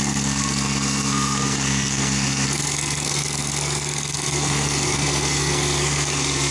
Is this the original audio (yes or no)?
no